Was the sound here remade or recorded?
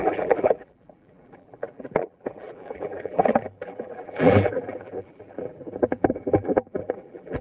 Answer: remade